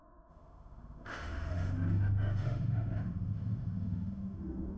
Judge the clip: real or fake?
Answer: fake